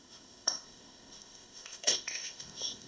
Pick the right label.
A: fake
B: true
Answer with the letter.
A